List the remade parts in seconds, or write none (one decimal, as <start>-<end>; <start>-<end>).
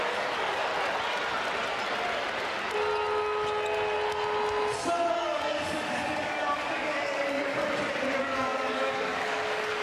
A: 0.0-0.7; 5.1-7.6; 8.2-9.8